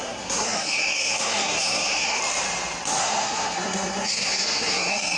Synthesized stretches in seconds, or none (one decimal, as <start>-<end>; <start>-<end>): 0.0-2.2; 3.0-5.2